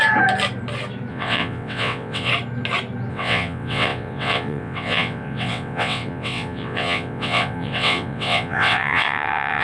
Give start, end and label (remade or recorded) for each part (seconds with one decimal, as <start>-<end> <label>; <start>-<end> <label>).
0.0-1.1 recorded; 1.1-2.3 remade; 2.3-3.1 recorded; 3.1-9.6 remade